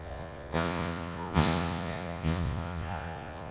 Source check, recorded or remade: remade